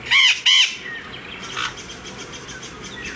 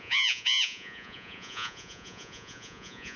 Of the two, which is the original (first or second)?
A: first